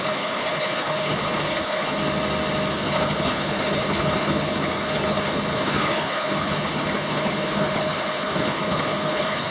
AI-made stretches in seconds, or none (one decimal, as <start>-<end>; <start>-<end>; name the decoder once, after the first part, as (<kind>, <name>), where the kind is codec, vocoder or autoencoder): 0.0-2.0 (codec, HILCodec); 2.7-9.5